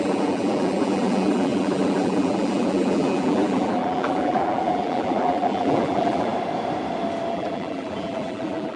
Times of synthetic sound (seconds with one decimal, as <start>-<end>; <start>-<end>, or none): 0.0-6.3; 7.3-8.8